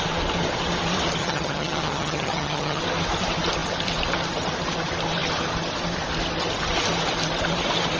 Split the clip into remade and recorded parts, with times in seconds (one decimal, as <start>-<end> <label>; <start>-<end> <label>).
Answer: 0.0-1.2 recorded; 1.2-2.8 remade; 2.8-8.0 recorded